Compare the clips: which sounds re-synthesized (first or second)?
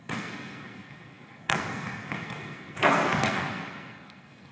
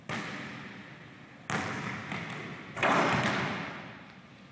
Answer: first